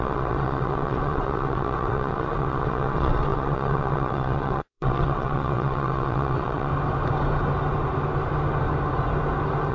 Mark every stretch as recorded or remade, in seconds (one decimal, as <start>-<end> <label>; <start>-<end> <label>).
0.0-6.7 remade; 6.7-9.7 recorded